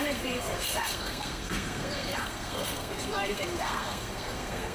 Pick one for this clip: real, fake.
fake